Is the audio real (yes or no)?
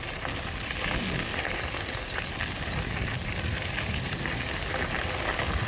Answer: yes